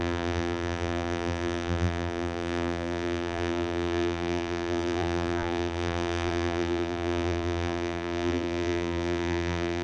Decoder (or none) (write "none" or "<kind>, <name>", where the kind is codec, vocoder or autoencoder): vocoder, BigVGAN v2